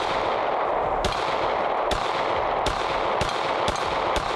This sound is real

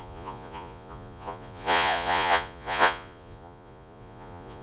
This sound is fake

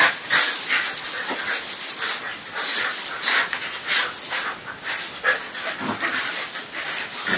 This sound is real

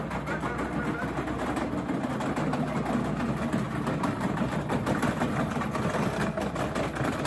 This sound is real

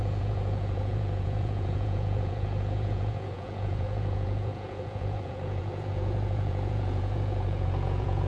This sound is fake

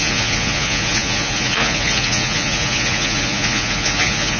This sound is fake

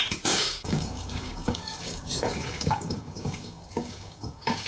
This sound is fake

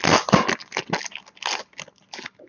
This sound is real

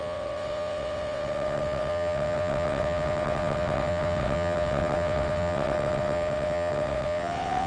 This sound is fake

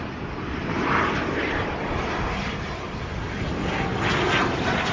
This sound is real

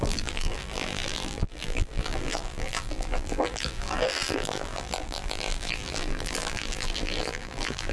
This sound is fake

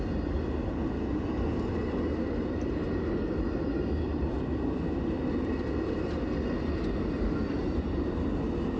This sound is real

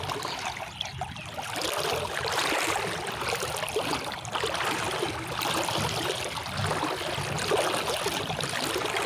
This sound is real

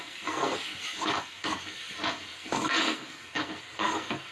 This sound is fake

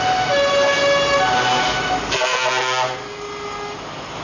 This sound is real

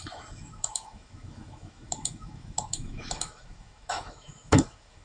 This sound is fake